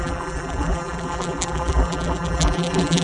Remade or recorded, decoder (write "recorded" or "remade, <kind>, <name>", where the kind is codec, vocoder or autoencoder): remade, vocoder, BigVGAN v2